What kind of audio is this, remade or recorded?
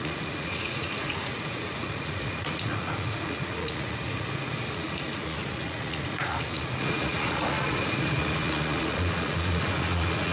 remade